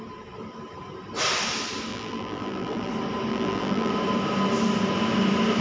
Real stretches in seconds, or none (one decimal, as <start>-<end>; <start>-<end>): 0.0-1.9; 2.9-3.3; 3.9-5.6